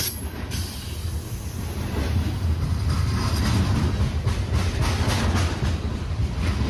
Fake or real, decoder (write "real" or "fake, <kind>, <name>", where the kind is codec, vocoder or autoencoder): real